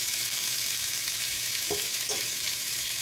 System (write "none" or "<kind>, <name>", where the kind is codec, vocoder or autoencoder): autoencoder, DAC-VAE